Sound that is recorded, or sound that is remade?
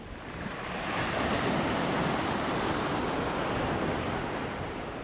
recorded